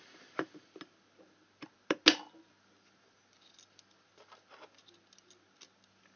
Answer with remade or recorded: recorded